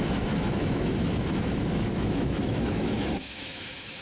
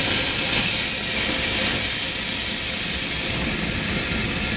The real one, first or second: second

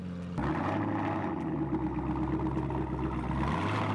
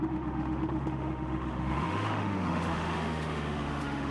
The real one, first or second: first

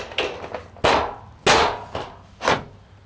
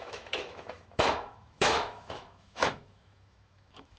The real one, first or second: first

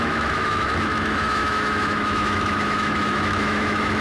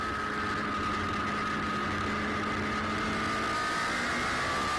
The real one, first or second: second